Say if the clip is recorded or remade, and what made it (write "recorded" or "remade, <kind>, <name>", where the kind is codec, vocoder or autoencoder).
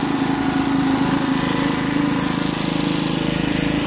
recorded